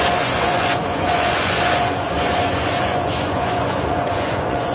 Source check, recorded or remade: remade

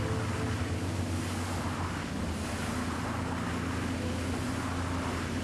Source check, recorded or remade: recorded